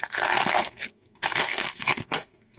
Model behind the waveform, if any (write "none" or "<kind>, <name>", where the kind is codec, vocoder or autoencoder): codec, SNAC